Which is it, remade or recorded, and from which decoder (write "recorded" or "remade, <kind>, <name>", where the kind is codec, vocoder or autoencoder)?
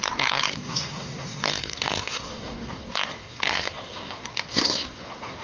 remade, codec, SNAC